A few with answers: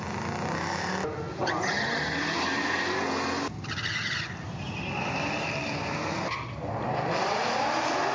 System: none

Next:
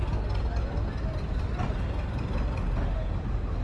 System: none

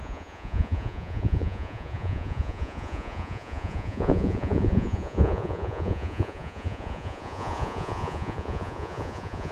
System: vocoder, Vocos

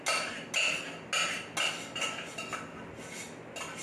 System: none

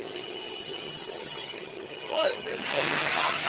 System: vocoder, HiFi-GAN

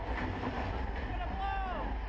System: none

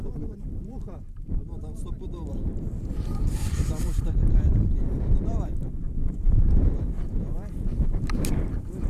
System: vocoder, BigVGAN v2